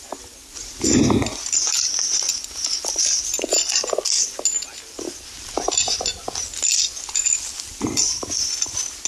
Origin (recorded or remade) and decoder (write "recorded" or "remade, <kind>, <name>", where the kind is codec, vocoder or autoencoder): recorded